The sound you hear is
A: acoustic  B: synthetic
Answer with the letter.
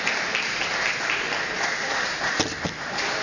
A